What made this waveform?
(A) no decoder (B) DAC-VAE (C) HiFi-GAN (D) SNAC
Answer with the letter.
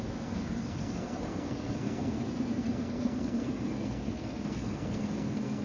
D